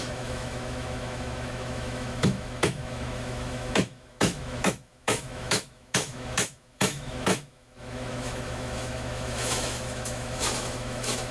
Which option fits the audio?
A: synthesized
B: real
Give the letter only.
A